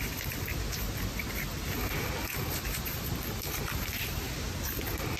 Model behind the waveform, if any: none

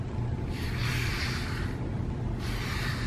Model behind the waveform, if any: none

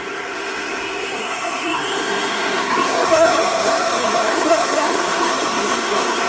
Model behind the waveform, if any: codec, SNAC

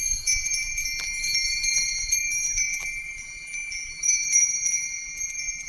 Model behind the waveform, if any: vocoder, BigVGAN v2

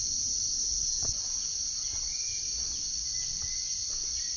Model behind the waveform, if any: none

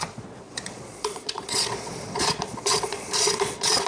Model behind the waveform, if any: vocoder, Vocos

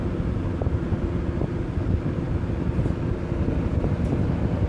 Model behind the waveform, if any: none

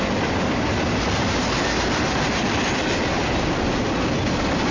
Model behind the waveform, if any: none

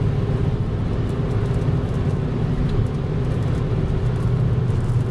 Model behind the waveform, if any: none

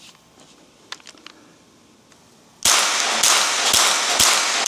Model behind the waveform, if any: none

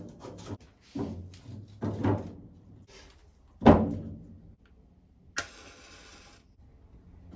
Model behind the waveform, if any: none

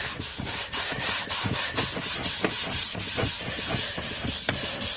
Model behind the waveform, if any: none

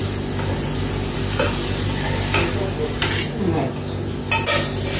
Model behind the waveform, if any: none